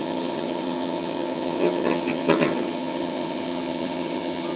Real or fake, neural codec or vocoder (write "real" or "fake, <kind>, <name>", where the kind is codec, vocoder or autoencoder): fake, vocoder, HiFi-GAN